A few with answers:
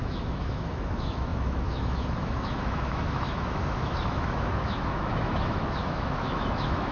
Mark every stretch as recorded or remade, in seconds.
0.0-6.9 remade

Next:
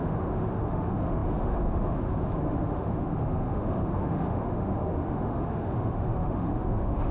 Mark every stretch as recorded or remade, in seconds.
0.0-7.1 remade

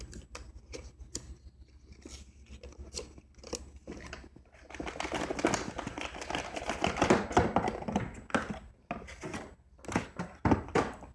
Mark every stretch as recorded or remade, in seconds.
0.0-11.1 recorded

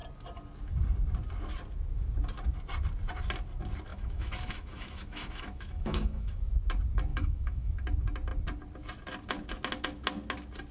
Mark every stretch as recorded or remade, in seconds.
0.0-3.9 recorded; 3.9-6.4 remade; 6.4-7.1 recorded; 7.1-7.7 remade; 7.7-10.7 recorded